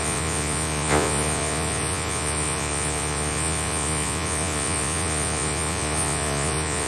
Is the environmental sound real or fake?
fake